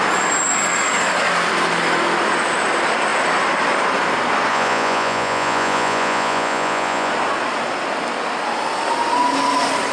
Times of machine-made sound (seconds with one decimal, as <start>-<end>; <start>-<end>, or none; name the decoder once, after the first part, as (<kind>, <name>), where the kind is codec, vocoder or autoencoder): 4.5-7.1 (vocoder, Vocos)